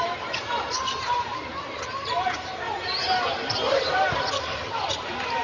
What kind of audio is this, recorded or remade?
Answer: remade